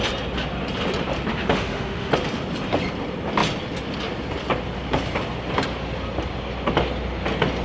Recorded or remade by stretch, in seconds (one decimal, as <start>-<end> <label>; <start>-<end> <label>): 0.0-1.3 recorded; 1.3-2.1 remade; 2.1-7.6 recorded